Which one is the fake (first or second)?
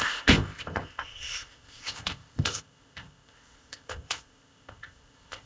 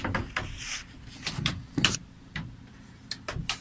first